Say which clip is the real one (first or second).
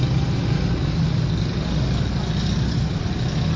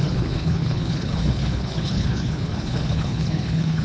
first